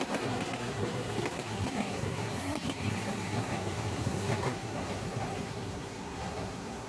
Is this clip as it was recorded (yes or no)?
no